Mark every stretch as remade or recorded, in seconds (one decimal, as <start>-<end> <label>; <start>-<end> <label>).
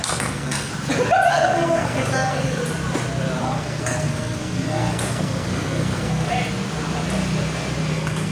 0.0-0.7 remade; 0.7-1.3 recorded; 1.3-2.6 remade; 2.6-3.4 recorded; 3.4-6.3 remade; 6.3-7.9 recorded; 7.9-8.3 remade